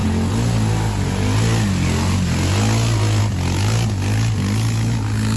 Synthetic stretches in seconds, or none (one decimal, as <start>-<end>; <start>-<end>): none